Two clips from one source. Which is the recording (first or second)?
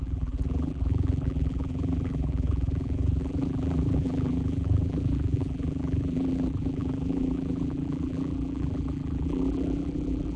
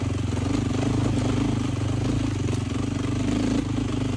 second